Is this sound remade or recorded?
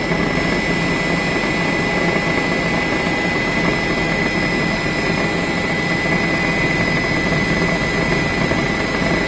recorded